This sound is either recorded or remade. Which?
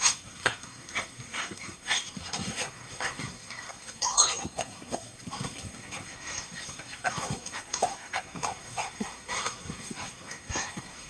remade